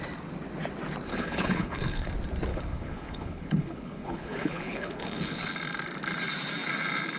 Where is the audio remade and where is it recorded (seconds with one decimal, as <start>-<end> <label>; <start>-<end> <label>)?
0.0-1.1 recorded; 1.1-2.1 remade; 2.1-2.5 recorded; 2.5-5.5 remade; 5.5-7.2 recorded